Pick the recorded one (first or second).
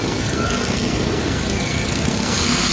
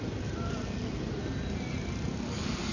second